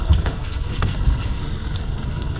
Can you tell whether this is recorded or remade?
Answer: remade